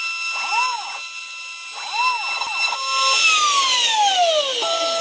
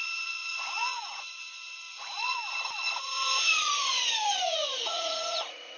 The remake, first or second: second